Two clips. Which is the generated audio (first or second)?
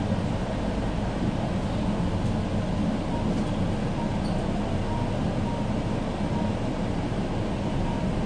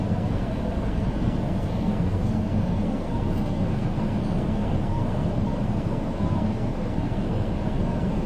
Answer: second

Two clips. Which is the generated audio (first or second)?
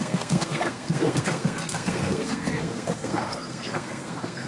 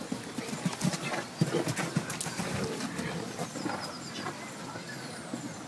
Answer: first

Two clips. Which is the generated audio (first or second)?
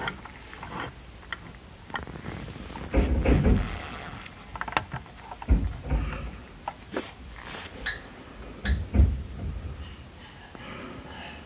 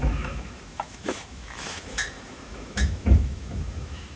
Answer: second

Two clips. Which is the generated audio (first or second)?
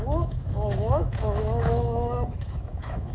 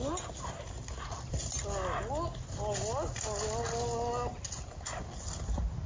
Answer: first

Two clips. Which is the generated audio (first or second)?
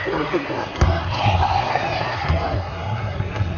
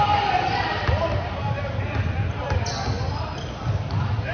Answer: first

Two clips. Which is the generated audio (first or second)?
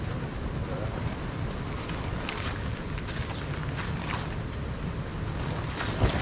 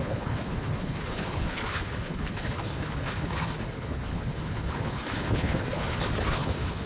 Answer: second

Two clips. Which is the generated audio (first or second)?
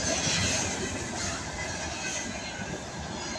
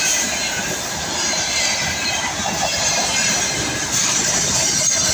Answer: second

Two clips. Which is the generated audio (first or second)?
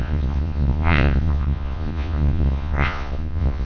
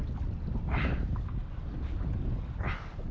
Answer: first